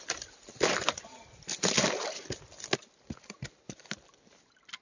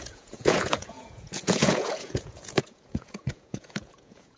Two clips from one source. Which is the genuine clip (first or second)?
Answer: first